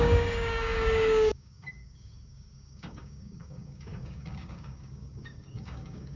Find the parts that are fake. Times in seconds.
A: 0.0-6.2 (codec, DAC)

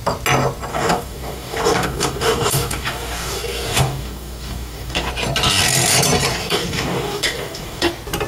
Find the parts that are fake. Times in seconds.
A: 0.7-5.1 (codec, DAC); 6.3-7.9

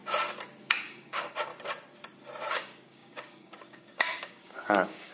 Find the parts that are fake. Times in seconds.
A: 0.6-1.5 (codec, DAC); 2.5-5.1

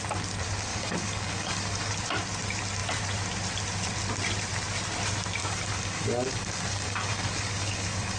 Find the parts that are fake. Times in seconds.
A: 0.7-1.9 (codec, DAC); 5.4-8.2

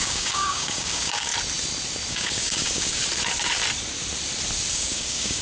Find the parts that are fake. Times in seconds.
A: 0.0-1.3 (codec, DAC); 2.1-3.0; 4.7-5.4

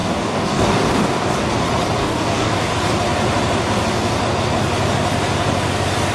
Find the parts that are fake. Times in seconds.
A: 0.0-1.5 (codec, DAC); 2.0-2.7

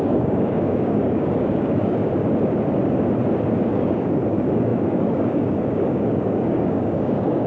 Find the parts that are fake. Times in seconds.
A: 0.0-2.0 (codec, DAC); 3.7-7.5